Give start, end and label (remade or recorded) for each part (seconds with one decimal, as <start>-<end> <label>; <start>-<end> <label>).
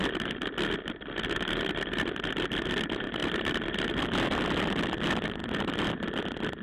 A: 0.0-3.2 recorded; 3.2-4.0 remade; 4.0-5.4 recorded; 5.4-6.6 remade